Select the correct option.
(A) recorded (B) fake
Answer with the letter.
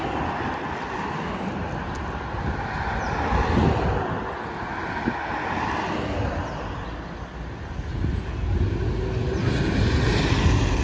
A